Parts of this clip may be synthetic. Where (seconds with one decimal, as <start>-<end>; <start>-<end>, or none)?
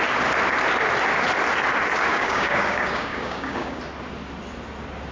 2.1-3.8